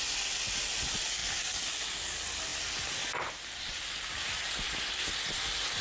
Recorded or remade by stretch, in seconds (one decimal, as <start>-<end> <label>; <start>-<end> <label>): 0.0-5.8 recorded

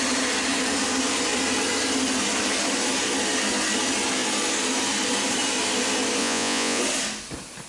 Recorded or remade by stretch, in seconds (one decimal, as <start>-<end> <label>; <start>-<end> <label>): 0.0-6.2 recorded; 6.2-6.8 remade; 6.8-7.7 recorded